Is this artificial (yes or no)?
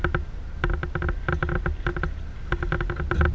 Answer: no